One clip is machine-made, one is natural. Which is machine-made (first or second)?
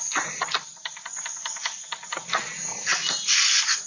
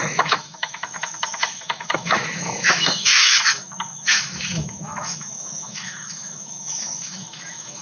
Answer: second